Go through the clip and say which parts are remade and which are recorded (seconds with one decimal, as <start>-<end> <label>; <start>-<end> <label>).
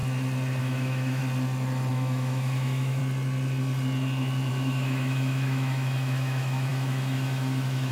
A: 0.0-0.6 recorded; 0.6-1.2 remade; 1.2-1.9 recorded; 1.9-3.0 remade; 3.0-4.5 recorded; 4.5-7.9 remade